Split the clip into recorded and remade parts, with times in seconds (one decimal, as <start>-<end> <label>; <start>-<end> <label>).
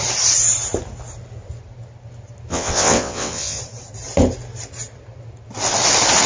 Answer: 0.0-2.5 recorded; 2.5-3.6 remade; 3.6-6.3 recorded